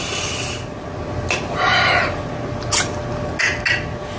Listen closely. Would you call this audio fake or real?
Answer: real